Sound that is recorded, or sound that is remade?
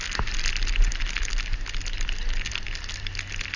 recorded